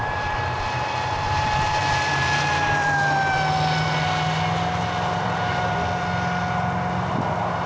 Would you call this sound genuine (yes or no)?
no